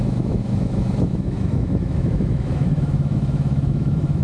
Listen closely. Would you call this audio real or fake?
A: fake